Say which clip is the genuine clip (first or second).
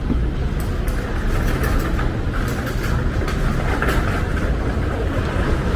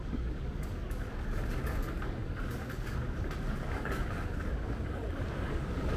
first